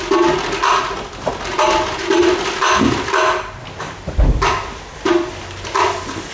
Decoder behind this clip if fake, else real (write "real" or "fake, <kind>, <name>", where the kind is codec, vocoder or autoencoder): real